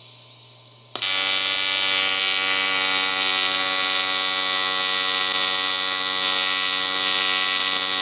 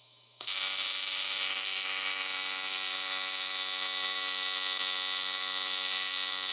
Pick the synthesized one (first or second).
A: second